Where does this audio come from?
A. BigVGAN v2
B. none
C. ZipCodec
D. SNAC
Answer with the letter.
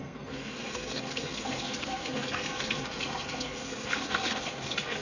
D